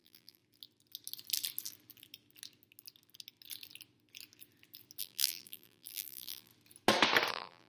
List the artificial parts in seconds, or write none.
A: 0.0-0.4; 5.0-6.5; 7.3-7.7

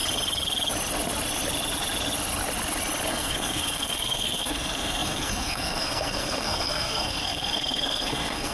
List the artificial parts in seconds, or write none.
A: 3.1-8.5

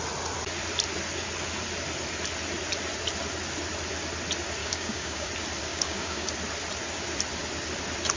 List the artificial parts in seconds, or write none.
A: 4.6-5.3; 5.7-6.3

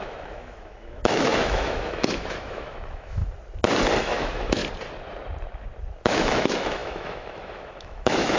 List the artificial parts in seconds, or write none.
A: 0.0-3.2; 4.0-4.6; 6.0-8.4